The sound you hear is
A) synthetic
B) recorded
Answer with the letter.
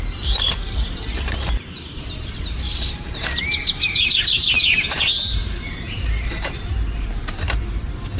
A